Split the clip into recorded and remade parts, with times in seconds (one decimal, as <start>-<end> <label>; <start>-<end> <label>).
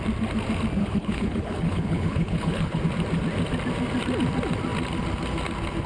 0.0-0.8 recorded; 0.8-2.8 remade; 2.8-5.9 recorded